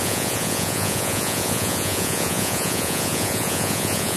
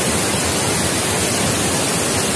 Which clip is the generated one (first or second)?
first